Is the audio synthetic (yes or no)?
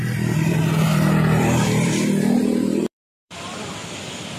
yes